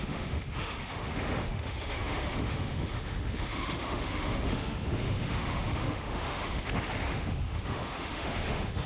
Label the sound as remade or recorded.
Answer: remade